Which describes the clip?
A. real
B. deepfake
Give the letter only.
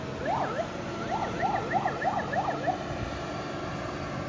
A